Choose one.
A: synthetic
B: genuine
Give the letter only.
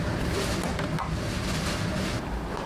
B